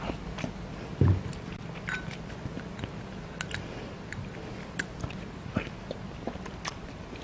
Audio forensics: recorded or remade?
recorded